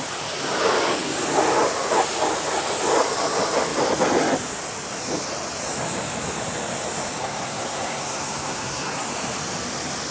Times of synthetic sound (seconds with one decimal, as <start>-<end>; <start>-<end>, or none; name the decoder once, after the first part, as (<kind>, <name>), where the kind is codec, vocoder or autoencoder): 7.2-9.1 (codec, SNAC)